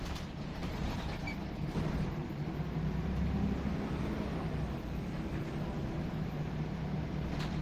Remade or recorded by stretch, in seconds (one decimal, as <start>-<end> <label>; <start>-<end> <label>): 0.0-7.6 remade